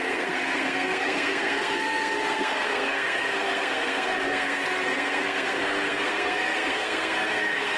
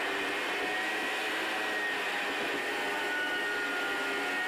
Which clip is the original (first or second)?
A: second